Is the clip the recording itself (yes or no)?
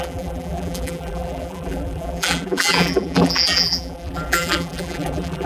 no